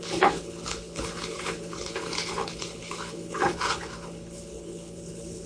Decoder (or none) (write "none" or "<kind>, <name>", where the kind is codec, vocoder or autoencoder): codec, HILCodec